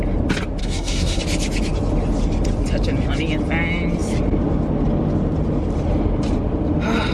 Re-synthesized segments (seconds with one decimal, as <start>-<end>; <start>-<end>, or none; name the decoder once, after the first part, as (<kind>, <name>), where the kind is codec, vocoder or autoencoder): 0.6-1.2 (codec, SNAC)